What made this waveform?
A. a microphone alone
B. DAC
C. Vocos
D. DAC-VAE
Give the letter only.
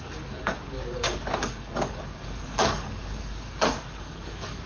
B